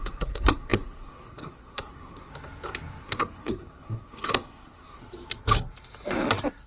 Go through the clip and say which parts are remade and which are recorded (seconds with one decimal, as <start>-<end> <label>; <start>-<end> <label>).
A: 0.0-2.3 remade; 2.3-3.0 recorded; 3.0-5.0 remade; 5.0-6.7 recorded